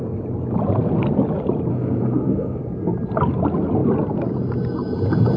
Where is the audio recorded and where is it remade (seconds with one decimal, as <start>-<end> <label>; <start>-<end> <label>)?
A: 0.0-1.7 recorded; 1.7-2.6 remade; 2.6-5.4 recorded